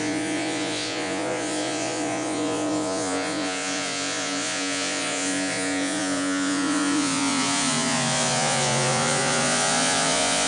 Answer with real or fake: fake